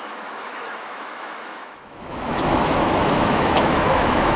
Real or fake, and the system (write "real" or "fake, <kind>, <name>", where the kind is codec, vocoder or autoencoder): fake, autoencoder, DAC-VAE